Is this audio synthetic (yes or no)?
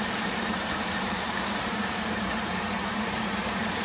yes